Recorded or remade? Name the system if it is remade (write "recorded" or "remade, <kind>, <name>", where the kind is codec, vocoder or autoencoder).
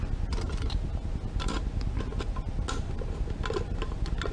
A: recorded